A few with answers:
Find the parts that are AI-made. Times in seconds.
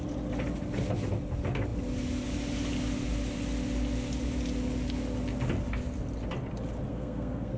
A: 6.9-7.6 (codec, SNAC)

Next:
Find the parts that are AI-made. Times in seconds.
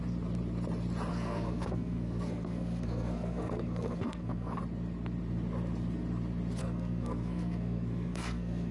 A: 1.1-4.6 (codec, SNAC); 6.6-8.7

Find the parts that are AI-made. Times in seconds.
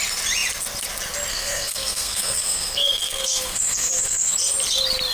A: 1.3-4.3 (codec, SNAC)